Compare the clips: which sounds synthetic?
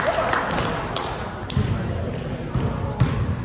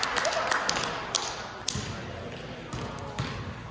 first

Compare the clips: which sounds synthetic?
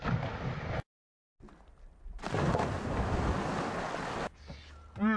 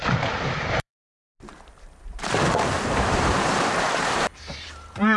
second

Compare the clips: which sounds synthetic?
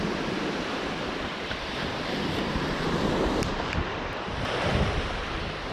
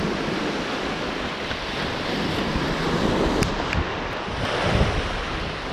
first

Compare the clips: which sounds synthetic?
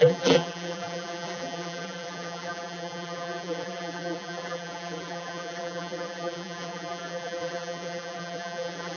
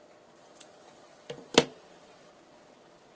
first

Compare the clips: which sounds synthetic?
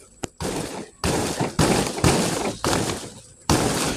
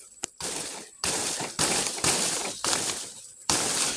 second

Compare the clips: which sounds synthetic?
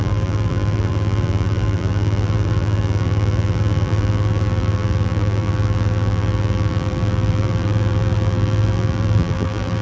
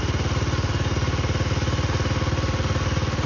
first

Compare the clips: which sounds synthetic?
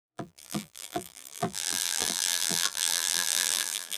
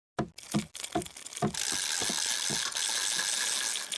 first